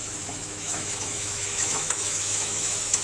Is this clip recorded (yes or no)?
no